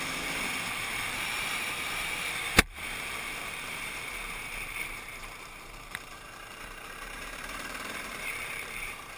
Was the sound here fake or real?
fake